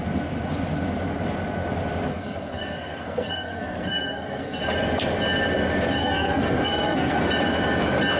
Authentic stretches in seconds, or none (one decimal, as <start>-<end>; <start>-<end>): 0.0-2.1; 4.6-6.0; 7.3-8.2